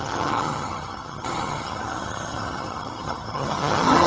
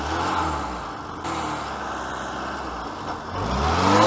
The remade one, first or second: first